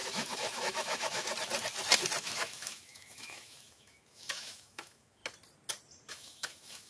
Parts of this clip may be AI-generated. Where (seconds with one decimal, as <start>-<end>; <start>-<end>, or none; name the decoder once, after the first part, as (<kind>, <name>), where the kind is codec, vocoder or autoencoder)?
0.0-1.3 (autoencoder, DAC-VAE); 2.2-5.2; 6.1-6.9